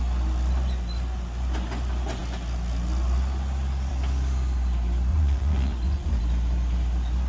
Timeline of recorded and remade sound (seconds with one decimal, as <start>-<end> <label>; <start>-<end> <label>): 0.0-5.1 recorded; 5.1-6.2 remade; 6.2-7.3 recorded